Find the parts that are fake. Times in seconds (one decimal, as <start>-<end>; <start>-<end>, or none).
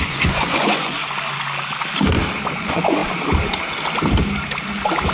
0.0-1.0; 2.5-3.0